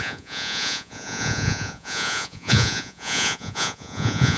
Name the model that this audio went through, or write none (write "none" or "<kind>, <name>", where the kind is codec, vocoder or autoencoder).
vocoder, Vocos